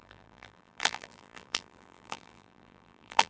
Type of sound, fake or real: fake